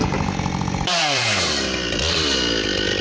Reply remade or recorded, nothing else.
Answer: remade